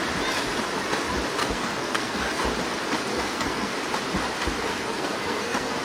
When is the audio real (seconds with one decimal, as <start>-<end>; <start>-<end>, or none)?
0.0-1.4; 2.4-3.1; 3.7-4.7